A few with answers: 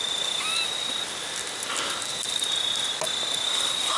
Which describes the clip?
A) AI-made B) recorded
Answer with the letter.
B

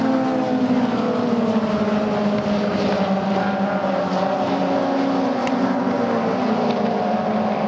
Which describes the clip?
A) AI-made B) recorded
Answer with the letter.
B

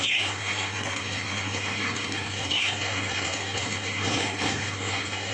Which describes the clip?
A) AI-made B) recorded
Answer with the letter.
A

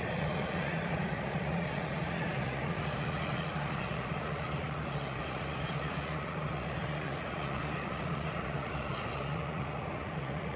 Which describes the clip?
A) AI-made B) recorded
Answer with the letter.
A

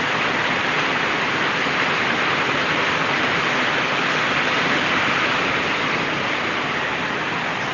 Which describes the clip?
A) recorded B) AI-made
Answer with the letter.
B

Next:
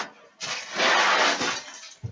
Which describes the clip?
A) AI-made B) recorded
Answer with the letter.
B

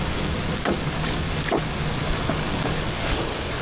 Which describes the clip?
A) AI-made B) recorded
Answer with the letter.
A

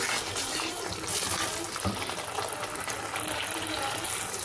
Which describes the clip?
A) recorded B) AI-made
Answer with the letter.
A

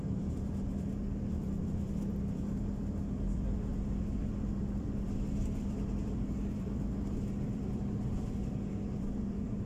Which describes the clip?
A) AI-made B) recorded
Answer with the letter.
A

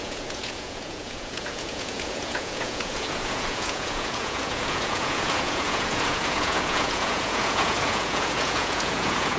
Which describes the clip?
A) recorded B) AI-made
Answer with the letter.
B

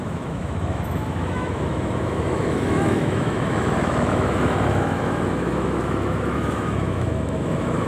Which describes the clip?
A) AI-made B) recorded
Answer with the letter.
A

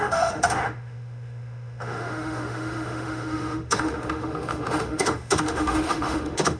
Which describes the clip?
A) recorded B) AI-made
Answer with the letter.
B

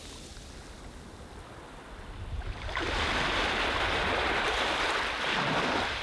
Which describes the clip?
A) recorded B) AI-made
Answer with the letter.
A